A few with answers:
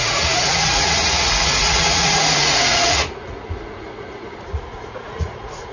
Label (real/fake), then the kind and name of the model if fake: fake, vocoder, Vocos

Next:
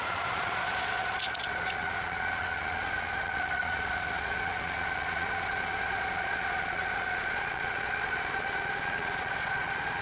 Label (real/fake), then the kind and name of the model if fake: fake, vocoder, Vocos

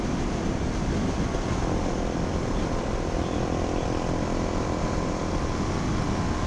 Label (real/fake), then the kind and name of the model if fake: real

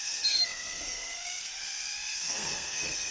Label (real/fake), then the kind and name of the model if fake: fake, codec, SNAC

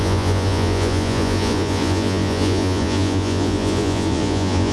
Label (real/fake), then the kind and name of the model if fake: fake, vocoder, Vocos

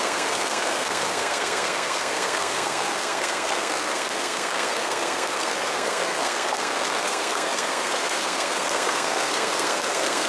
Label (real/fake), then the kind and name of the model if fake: fake, codec, SNAC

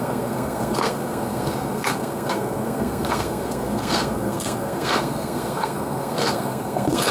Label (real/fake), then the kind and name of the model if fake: fake, codec, SNAC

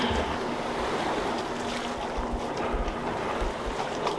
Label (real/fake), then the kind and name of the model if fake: real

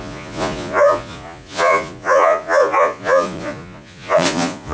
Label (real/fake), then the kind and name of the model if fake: fake, vocoder, Vocos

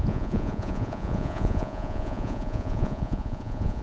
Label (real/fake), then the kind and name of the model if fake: fake, vocoder, Vocos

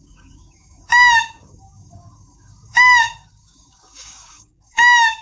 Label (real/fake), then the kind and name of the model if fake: fake, codec, DAC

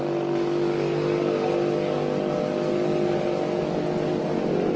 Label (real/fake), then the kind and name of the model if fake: real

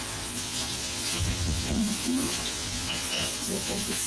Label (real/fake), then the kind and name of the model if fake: fake, vocoder, Vocos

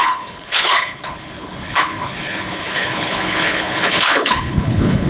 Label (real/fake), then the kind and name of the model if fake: fake, codec, HILCodec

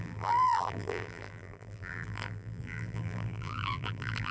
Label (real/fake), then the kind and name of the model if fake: fake, vocoder, BigVGAN v2